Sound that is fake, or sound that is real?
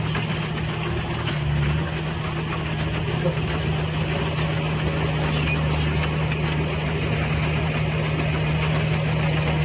real